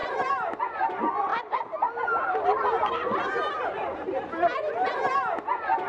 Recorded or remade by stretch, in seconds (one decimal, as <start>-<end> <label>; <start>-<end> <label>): 0.0-0.6 remade; 0.6-5.9 recorded